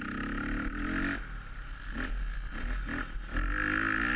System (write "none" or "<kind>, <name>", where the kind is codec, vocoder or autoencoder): none